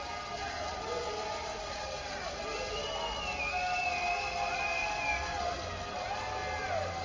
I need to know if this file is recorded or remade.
recorded